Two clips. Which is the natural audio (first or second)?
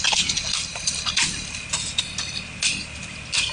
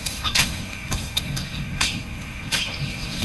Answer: first